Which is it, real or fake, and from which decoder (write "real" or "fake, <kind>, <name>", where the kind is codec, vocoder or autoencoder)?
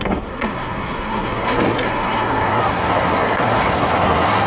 fake, codec, SNAC